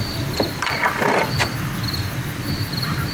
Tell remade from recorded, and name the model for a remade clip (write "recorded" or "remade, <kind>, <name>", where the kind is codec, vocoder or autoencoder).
remade, vocoder, BigVGAN v2